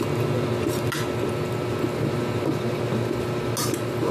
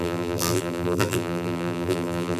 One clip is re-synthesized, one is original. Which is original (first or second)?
first